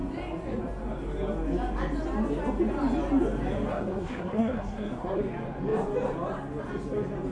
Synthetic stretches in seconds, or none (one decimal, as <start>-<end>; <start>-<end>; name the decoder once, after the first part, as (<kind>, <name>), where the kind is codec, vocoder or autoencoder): 3.7-5.2 (codec, SNAC)